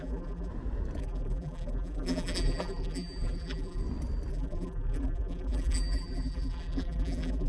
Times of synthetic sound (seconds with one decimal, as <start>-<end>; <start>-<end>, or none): 0.0-0.5; 1.0-3.8; 4.3-7.5